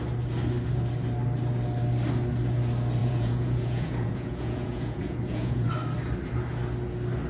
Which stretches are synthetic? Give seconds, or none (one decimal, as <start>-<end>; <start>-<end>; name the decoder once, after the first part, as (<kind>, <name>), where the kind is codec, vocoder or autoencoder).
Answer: 3.0-5.7 (vocoder, Vocos)